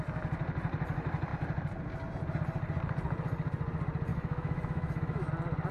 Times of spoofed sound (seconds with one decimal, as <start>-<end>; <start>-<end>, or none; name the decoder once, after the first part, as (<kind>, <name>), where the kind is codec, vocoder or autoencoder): 4.1-5.3 (autoencoder, DAC-VAE)